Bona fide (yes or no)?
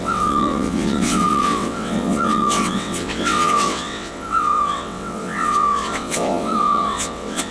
no